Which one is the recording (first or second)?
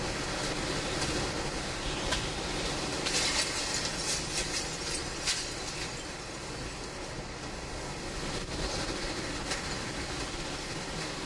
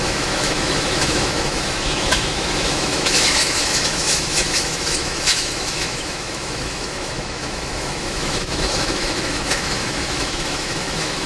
first